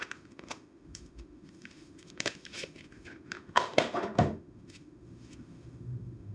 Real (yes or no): no